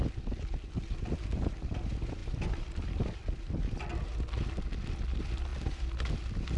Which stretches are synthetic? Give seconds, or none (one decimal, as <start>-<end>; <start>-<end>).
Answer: 2.2-3.8